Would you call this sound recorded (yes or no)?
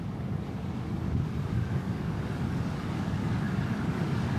no